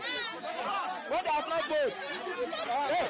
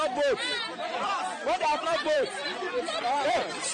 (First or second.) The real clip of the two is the first